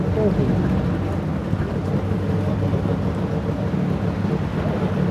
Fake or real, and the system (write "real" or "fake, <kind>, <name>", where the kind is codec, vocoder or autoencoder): real